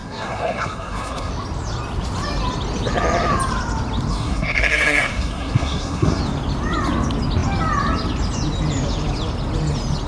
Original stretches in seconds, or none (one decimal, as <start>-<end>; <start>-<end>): 1.3-4.1; 6.2-10.1